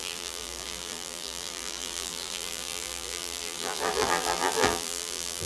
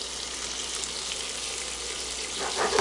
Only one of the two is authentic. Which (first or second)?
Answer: second